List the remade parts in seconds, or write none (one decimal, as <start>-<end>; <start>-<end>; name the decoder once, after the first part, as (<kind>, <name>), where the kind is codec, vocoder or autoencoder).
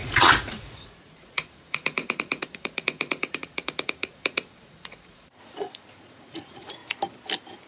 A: 0.0-6.8 (vocoder, Vocos)